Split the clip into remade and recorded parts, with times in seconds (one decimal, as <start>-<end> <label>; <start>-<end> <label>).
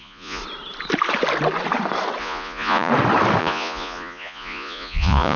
0.0-0.4 remade; 0.4-2.2 recorded; 2.2-2.9 remade; 2.9-3.4 recorded; 3.4-5.4 remade